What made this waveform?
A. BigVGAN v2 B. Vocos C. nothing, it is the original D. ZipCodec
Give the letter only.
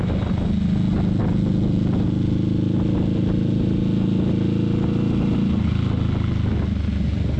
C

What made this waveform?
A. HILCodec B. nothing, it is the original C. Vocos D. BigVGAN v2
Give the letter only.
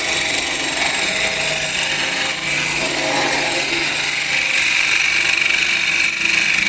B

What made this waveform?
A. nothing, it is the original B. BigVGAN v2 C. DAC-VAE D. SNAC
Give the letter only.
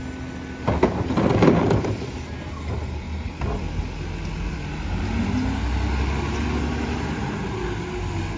A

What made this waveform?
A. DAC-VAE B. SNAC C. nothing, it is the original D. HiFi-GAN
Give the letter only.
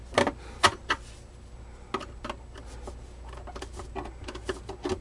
C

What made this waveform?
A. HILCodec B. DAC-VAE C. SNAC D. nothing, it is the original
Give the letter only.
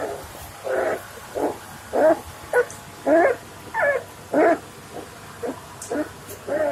D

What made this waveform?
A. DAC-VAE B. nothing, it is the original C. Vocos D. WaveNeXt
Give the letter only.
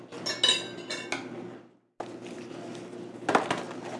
B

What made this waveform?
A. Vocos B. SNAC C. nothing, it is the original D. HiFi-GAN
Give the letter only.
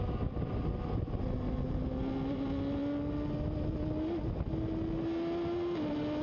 C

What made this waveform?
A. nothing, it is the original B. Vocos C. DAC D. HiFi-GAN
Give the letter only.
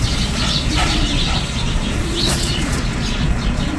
B